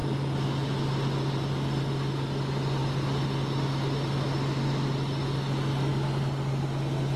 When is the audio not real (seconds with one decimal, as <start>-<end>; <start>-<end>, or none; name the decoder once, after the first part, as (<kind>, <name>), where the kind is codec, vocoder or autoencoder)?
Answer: none